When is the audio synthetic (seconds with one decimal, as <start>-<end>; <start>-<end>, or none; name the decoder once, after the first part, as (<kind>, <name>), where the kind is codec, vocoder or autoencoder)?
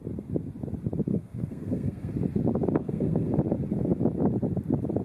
1.1-2.1 (codec, SNAC); 2.8-3.3